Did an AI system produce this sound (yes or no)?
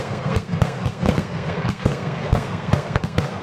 yes